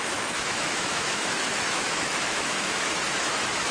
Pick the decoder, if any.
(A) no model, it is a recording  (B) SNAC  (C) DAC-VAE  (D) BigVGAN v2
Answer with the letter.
C